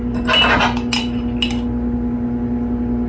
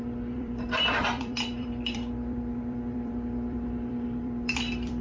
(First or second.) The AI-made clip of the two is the second